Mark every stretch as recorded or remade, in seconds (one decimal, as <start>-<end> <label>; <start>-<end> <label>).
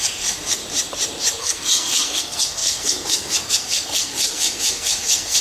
0.0-0.6 remade; 0.6-1.4 recorded; 1.4-5.4 remade